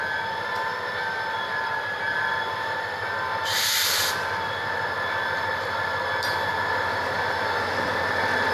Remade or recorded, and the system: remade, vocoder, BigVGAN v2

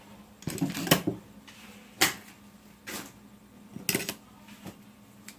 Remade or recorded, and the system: recorded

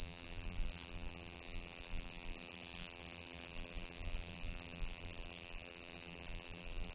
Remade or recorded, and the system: remade, vocoder, BigVGAN v2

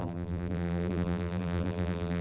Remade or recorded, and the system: remade, vocoder, BigVGAN v2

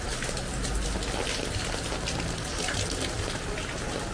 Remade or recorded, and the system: recorded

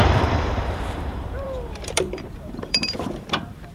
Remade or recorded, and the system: remade, vocoder, BigVGAN v2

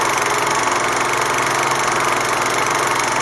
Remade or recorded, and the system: recorded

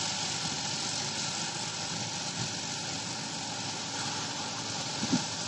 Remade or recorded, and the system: remade, vocoder, BigVGAN v2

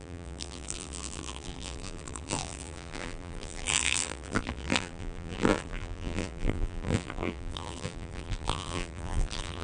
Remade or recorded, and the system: remade, vocoder, BigVGAN v2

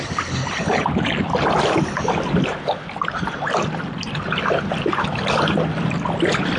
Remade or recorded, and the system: remade, vocoder, BigVGAN v2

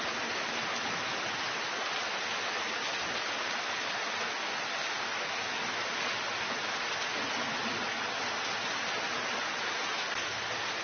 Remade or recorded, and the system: recorded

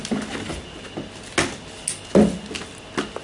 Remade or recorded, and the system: recorded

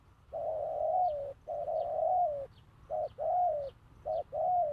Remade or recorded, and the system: recorded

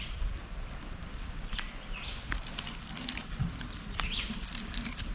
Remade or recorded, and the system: remade, vocoder, BigVGAN v2